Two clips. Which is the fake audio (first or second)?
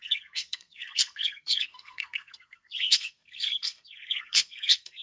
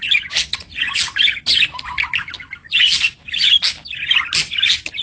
first